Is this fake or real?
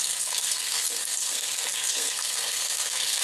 fake